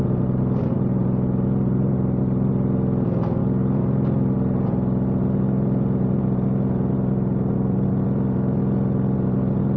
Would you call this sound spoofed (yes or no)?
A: no